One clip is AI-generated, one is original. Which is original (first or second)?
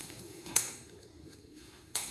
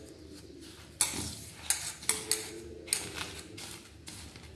second